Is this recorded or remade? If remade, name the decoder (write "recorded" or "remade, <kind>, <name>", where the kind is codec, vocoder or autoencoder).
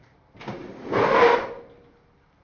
recorded